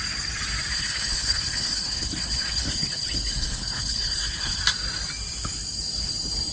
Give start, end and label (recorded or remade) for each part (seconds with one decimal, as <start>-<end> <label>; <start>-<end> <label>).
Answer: 0.0-0.7 recorded; 0.7-4.6 remade; 4.6-6.5 recorded

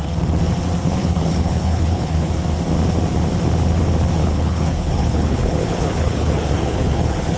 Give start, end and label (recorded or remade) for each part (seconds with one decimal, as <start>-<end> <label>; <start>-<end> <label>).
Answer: 0.0-1.0 recorded; 1.0-2.3 remade; 2.3-4.2 recorded; 4.2-7.4 remade

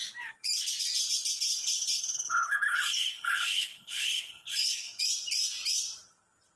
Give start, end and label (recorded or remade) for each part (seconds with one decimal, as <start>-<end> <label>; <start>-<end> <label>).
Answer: 0.0-1.5 recorded; 1.5-5.0 remade; 5.0-6.6 recorded

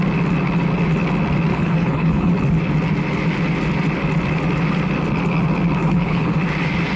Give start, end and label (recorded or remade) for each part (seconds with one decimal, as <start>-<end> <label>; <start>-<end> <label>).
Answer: 0.0-1.5 recorded; 1.5-2.3 remade; 2.3-5.8 recorded; 5.8-6.4 remade; 6.4-7.0 recorded

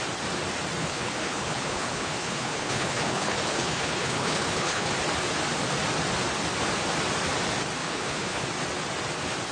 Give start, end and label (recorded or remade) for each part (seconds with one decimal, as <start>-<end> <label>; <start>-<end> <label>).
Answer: 0.0-0.8 recorded; 0.8-4.9 remade; 4.9-7.8 recorded; 7.8-8.4 remade; 8.4-9.5 recorded

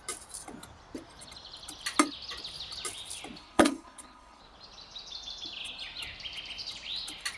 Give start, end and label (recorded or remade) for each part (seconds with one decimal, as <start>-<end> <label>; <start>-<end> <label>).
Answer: 0.0-3.4 recorded; 3.4-4.4 remade; 4.4-7.4 recorded

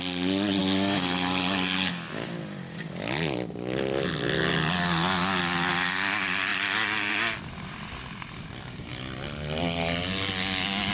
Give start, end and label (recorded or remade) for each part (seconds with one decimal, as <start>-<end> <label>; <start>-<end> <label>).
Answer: 0.0-10.9 recorded